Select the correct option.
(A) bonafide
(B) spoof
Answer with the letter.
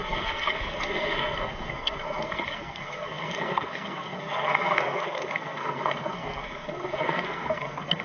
B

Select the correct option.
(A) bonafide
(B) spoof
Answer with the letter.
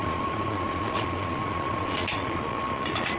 B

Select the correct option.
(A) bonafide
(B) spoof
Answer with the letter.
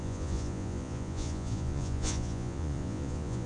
B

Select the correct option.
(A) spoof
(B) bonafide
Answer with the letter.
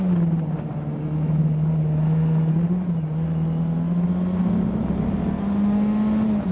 B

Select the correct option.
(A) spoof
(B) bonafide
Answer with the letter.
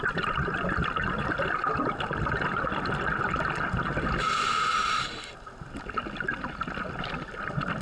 B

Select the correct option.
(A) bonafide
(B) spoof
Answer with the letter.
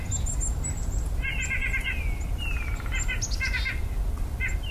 A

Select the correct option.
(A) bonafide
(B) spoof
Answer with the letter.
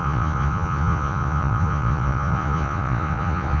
B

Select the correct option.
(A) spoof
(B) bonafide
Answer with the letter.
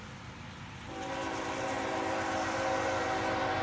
B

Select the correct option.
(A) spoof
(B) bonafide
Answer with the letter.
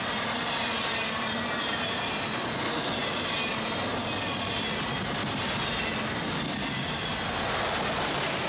B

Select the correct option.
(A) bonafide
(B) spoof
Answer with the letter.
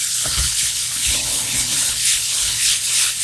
B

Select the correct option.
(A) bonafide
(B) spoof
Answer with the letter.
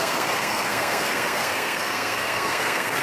B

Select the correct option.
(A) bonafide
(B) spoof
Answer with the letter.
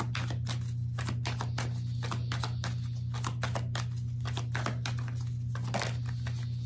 A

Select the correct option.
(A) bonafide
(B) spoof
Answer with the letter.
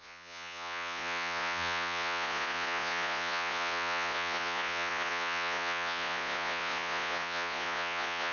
B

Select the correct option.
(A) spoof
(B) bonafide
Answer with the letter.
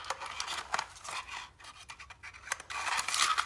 B